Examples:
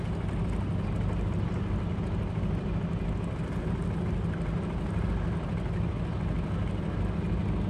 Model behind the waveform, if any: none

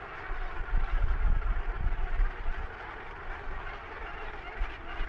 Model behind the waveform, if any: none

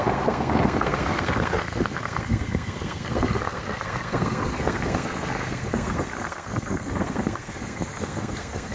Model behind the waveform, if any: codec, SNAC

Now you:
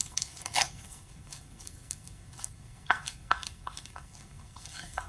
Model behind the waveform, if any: codec, SNAC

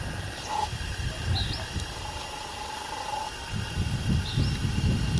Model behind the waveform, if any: none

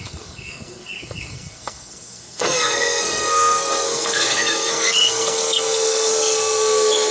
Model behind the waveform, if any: codec, SNAC